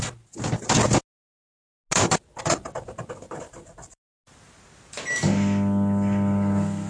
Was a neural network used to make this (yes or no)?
no